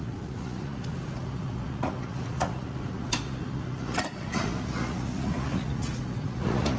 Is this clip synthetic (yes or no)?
yes